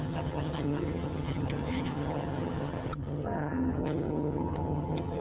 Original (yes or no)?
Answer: no